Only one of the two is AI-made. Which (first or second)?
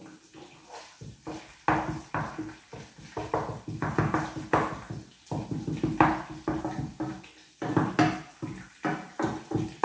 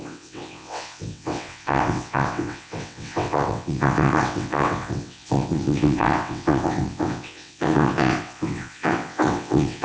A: second